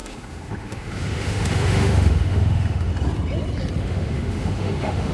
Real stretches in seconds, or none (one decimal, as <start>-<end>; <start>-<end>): 2.9-3.8